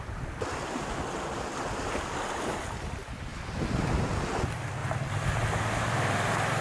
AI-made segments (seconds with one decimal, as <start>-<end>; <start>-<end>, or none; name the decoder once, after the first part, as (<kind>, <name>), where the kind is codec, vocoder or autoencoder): none